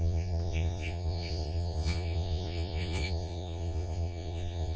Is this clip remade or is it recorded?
remade